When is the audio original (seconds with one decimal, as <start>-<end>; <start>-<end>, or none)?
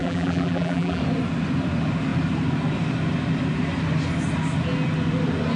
1.0-5.6